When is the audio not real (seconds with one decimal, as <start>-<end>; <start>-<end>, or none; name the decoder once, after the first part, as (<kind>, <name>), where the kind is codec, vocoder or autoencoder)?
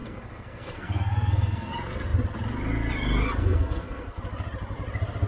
0.0-1.7 (codec, SNAC); 3.4-4.2